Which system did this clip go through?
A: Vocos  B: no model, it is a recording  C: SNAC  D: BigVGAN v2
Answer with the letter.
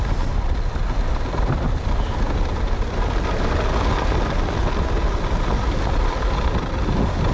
B